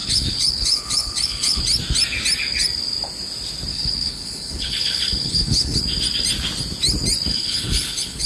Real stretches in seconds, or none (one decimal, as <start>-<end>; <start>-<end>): 1.6-3.7; 5.8-7.3